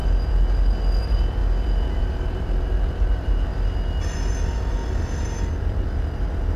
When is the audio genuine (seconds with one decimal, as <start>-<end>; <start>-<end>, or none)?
0.0-1.0; 1.4-2.0; 3.5-5.5

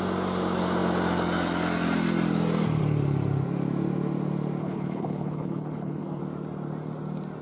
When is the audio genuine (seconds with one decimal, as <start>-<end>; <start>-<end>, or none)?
0.0-4.6; 6.2-7.4

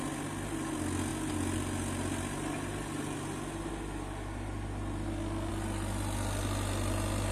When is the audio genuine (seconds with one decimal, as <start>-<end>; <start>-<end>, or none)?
0.0-7.3

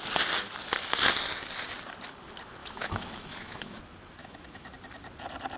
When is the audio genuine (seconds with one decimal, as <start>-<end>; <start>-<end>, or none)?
0.0-2.6; 3.8-4.2; 4.7-5.6

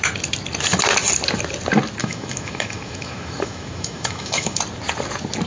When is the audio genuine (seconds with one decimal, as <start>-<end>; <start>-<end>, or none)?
0.0-2.0; 4.6-5.5